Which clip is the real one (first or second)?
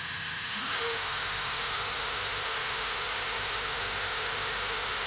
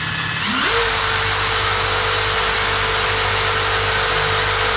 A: second